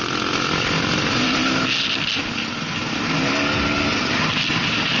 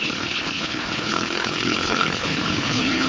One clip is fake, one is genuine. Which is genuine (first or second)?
first